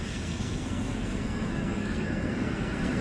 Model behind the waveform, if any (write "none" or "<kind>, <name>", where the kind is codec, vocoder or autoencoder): codec, SNAC